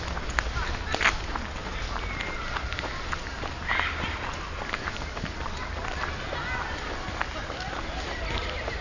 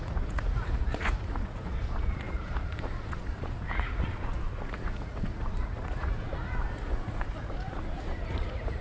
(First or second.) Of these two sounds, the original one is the first